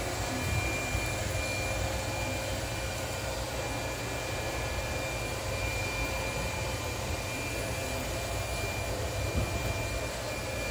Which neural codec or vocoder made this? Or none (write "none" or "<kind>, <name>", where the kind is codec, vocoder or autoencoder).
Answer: none